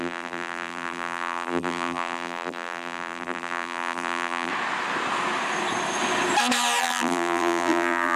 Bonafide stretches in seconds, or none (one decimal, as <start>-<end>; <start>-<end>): 4.5-6.8